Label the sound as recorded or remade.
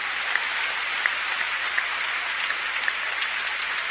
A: recorded